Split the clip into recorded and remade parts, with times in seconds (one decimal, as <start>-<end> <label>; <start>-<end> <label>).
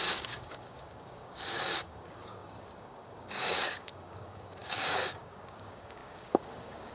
0.0-6.9 remade